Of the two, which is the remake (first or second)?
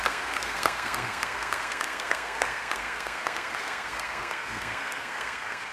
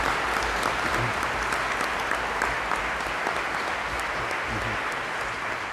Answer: first